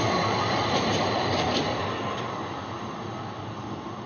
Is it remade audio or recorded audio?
remade